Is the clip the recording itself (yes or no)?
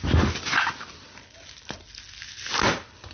yes